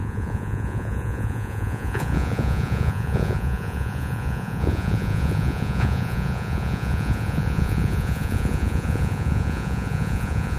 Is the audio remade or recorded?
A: remade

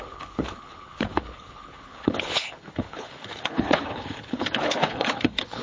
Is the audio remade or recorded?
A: remade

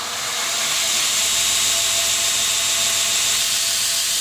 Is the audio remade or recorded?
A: recorded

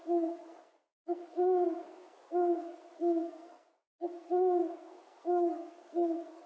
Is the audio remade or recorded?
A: remade